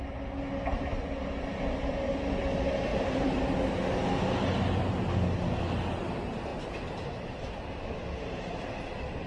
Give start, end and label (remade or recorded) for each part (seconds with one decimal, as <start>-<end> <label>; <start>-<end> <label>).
0.0-2.9 recorded; 2.9-3.7 remade; 3.7-6.5 recorded; 6.5-7.5 remade; 7.5-9.3 recorded